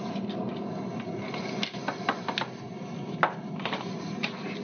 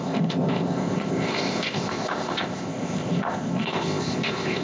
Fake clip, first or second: second